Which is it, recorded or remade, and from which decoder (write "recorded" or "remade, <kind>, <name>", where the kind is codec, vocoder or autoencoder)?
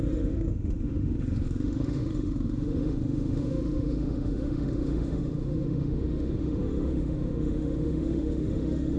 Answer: remade, autoencoder, DAC-VAE